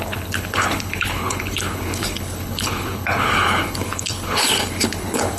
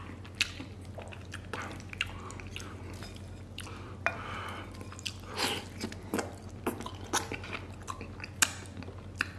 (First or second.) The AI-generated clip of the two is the first